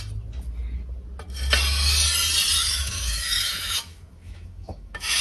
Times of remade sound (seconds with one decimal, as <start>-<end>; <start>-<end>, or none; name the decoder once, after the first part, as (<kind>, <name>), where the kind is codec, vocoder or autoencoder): 2.6-5.2 (autoencoder, DAC-VAE)